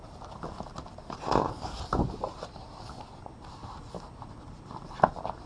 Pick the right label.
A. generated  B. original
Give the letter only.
B